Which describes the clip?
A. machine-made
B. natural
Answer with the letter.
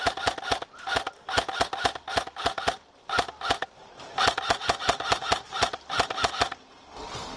B